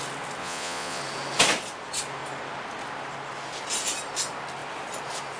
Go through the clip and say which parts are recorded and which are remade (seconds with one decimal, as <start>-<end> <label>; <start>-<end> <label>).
0.0-0.4 recorded; 0.4-1.0 remade; 1.0-5.4 recorded